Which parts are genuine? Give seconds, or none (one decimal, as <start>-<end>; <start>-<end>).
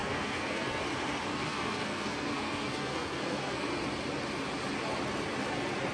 0.8-1.3; 3.7-5.9